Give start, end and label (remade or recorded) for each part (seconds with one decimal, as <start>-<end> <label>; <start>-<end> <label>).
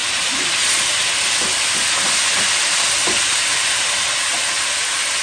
0.0-1.3 remade; 1.3-2.3 recorded; 2.3-5.2 remade